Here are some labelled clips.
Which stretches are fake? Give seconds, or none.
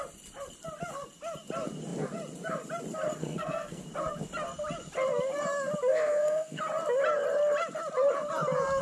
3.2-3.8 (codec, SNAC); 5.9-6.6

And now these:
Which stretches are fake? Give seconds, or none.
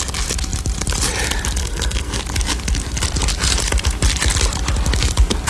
1.6-2.2 (codec, SNAC)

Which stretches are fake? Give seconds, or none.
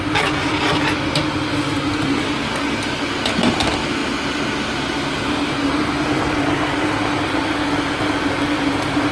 none